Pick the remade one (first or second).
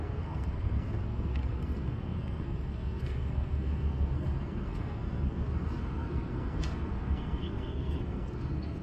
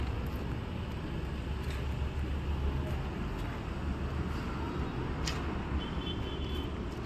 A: first